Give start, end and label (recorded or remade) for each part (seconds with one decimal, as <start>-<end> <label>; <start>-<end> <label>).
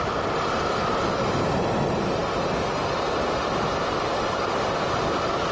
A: 0.0-2.2 recorded; 2.2-5.5 remade